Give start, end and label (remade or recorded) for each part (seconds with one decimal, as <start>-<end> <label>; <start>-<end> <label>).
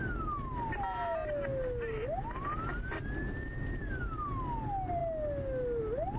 0.0-6.2 recorded